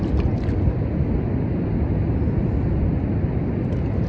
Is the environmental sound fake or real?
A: real